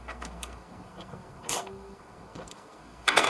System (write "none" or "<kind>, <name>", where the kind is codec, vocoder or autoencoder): codec, SNAC